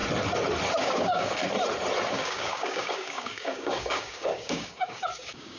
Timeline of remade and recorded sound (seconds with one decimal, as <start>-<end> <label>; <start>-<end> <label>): 0.0-0.8 recorded; 0.8-1.4 remade; 1.4-2.1 recorded; 2.1-5.6 remade